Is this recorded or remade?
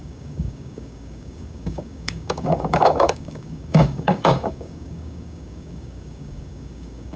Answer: remade